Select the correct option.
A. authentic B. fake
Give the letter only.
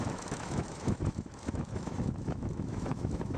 B